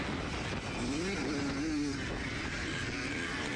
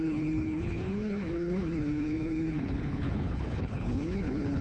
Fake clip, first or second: second